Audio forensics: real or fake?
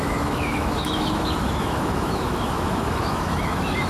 fake